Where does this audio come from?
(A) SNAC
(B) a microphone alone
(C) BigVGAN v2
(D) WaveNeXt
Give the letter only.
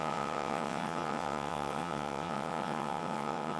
D